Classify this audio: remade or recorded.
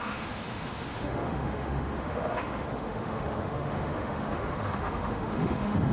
remade